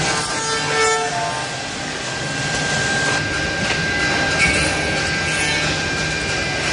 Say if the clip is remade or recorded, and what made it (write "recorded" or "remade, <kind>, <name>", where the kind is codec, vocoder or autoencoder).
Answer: recorded